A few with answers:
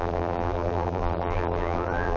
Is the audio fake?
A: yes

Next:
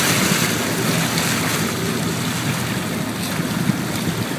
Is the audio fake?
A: no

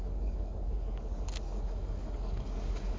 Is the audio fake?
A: yes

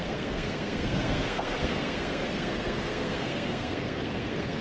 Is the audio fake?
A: yes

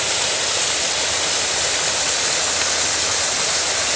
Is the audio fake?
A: no